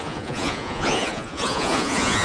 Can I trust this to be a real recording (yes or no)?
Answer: no